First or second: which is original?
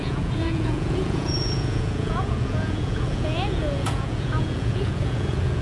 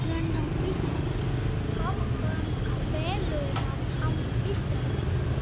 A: second